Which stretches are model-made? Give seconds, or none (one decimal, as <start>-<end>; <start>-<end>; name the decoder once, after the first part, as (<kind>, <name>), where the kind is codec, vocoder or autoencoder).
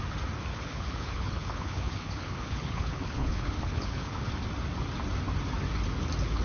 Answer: 0.5-4.3 (codec, HILCodec)